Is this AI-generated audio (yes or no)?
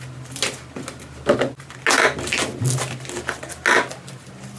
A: no